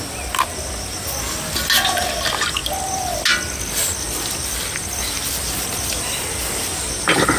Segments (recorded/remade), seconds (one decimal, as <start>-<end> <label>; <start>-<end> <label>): 0.0-7.4 recorded